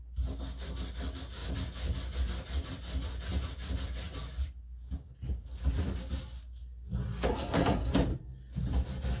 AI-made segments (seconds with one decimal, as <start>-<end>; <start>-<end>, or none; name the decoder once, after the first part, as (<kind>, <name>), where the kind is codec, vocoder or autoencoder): 7.3-7.9 (codec, SNAC)